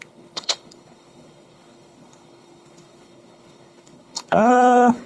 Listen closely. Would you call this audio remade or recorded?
remade